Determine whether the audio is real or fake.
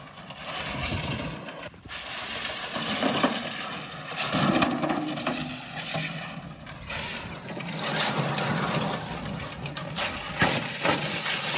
real